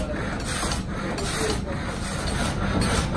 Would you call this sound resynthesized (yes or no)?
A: no